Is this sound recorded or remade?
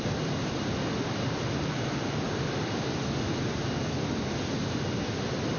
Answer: recorded